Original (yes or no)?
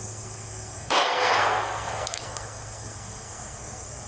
no